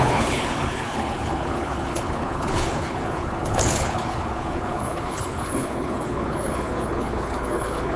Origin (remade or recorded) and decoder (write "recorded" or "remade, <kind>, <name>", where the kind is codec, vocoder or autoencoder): remade, codec, HILCodec